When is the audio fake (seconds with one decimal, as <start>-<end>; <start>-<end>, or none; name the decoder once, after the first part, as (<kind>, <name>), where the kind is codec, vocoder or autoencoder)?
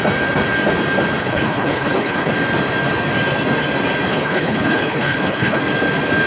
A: 1.2-2.3 (codec, HILCodec); 4.1-5.6